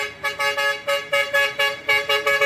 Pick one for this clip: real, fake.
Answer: real